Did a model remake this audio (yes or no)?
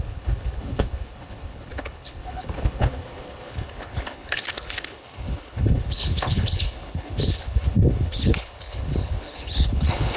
yes